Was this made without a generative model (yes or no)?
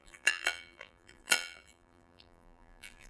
no